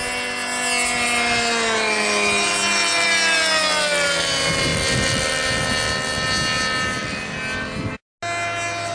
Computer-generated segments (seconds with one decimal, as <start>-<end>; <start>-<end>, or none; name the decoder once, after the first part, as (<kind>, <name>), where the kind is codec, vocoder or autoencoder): none